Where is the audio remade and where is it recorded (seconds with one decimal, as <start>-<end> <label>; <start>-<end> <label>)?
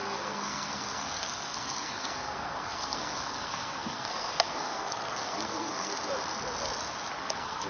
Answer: 0.0-5.9 remade; 5.9-7.2 recorded; 7.2-7.7 remade